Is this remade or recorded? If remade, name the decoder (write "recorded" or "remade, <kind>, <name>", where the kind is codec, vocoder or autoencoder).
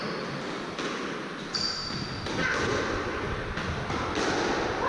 recorded